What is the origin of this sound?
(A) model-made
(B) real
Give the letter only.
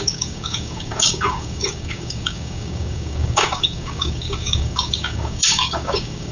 A